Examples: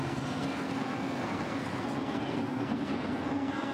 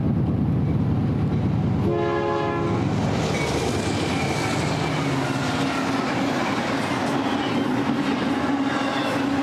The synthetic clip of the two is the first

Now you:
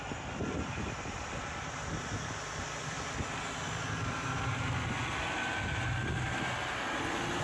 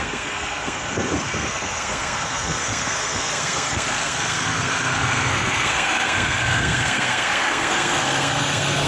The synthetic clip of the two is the second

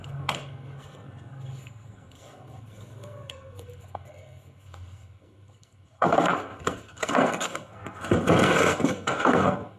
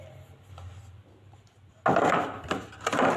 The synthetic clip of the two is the first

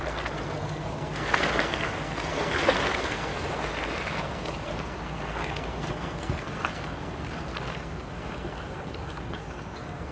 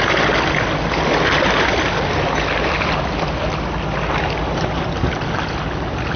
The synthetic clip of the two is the first